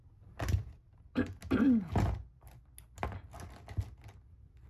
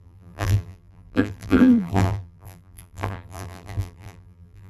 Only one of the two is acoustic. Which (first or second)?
first